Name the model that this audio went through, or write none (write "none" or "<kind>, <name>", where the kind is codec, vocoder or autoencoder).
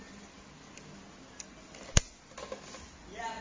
none